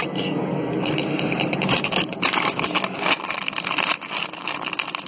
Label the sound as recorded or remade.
recorded